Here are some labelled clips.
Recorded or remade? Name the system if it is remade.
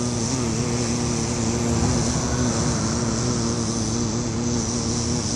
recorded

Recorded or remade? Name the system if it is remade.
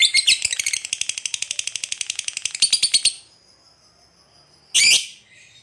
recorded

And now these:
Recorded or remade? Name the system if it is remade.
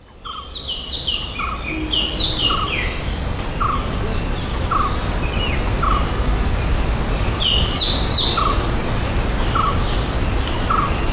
recorded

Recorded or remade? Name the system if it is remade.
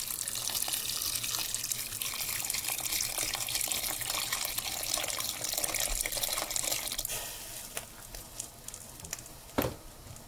recorded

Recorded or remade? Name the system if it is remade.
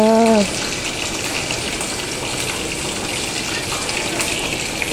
recorded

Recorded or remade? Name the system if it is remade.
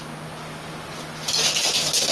recorded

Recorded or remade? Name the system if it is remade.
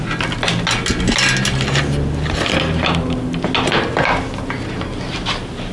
recorded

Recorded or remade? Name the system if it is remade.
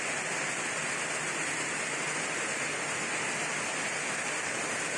recorded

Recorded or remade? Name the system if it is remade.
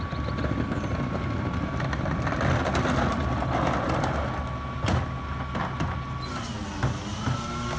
recorded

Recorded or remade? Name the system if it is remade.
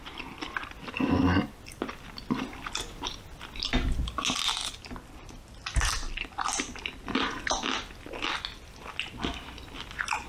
recorded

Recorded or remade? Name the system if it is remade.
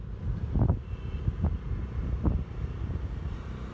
recorded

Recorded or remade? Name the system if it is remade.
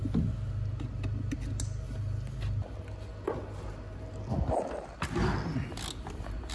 recorded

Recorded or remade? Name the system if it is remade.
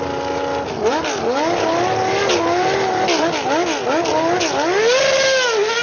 recorded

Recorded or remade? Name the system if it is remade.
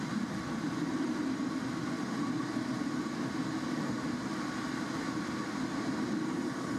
recorded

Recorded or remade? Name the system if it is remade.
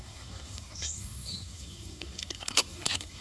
remade, codec, SNAC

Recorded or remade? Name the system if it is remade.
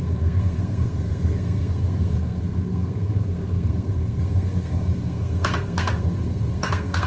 remade, codec, SNAC